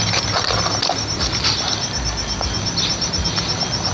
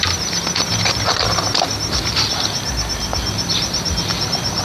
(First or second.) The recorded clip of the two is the first